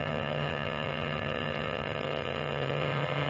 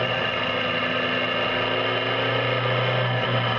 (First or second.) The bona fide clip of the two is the second